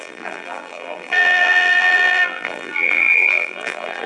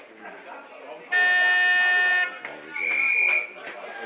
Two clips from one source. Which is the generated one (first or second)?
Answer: first